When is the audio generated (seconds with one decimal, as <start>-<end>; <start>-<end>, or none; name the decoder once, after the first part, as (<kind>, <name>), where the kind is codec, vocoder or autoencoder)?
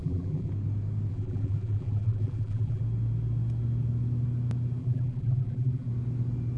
0.0-0.5 (vocoder, BigVGAN v2); 1.1-2.8; 4.8-5.9